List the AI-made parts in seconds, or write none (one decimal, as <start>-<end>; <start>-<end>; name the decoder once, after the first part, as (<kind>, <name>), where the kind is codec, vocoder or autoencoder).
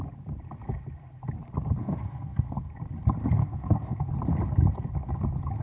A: 1.8-2.7 (codec, SNAC); 3.4-4.1